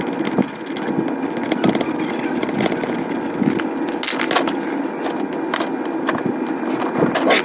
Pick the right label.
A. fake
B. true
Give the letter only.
B